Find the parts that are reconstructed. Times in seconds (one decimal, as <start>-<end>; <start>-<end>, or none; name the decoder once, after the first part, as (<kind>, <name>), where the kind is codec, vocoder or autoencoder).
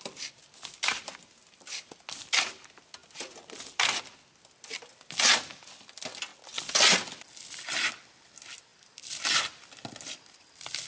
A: 8.7-9.4 (vocoder, BigVGAN v2)